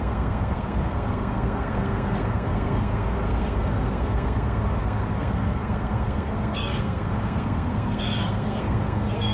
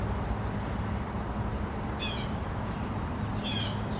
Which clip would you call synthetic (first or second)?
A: first